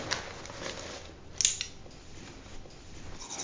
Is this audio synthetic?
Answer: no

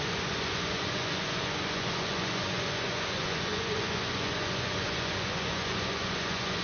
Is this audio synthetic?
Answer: yes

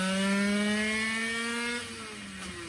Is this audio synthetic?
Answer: no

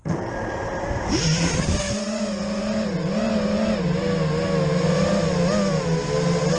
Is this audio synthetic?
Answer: no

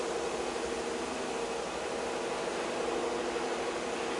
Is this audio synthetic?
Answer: no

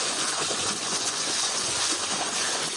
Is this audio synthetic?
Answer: yes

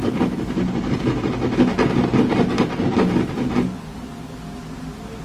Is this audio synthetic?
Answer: no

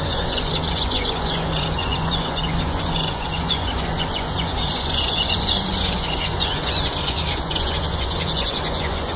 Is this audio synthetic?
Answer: yes